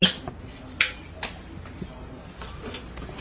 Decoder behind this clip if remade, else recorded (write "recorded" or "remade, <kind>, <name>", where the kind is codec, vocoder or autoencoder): recorded